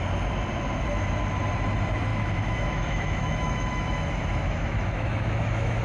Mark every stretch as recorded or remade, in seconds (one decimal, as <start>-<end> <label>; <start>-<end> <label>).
0.0-2.1 recorded; 2.1-5.8 remade